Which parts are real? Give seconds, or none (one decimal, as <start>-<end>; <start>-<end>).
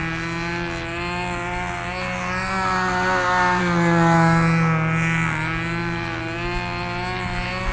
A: 0.0-7.7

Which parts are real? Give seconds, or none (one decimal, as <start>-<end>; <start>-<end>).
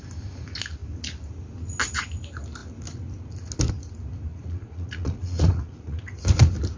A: 0.0-4.3; 6.0-6.8